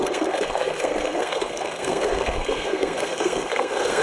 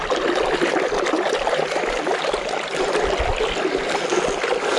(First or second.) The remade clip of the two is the first